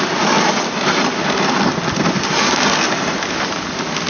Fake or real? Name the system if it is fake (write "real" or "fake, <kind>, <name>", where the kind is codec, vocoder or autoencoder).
real